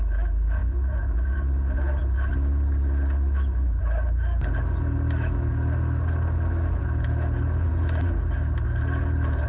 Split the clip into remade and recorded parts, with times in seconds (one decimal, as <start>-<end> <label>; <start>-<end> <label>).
0.0-9.5 recorded